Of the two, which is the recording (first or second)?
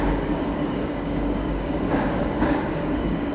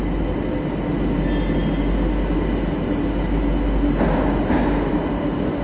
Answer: second